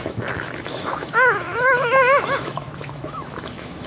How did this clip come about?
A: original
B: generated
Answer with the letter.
B